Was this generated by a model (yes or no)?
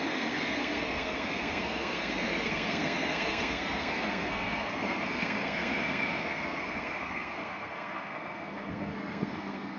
yes